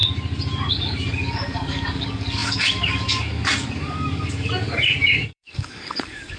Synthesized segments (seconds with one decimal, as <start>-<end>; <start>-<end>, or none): 0.7-6.4